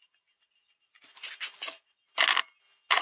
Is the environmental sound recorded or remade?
recorded